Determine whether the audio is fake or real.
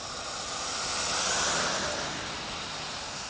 real